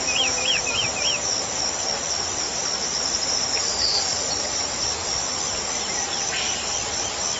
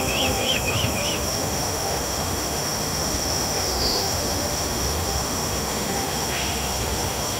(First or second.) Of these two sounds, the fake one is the second